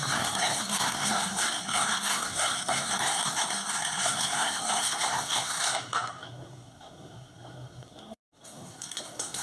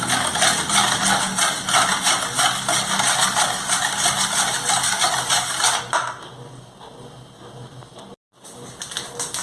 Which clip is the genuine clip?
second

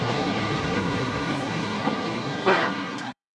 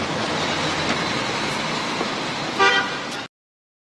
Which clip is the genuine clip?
second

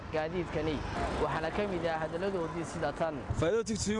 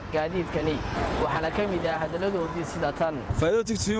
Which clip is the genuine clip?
first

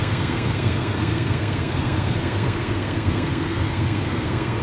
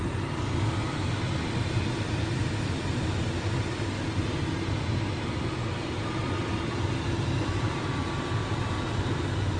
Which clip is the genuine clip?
second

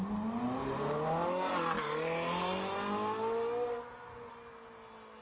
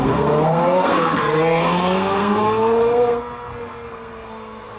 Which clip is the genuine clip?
first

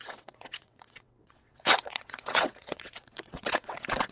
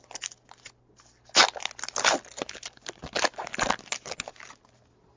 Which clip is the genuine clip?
second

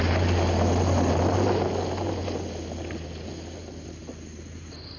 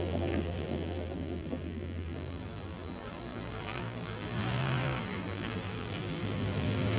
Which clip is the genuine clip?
first